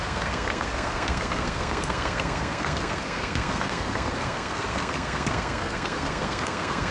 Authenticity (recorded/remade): remade